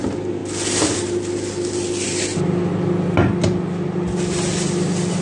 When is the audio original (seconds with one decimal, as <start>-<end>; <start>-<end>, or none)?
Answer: 0.0-5.2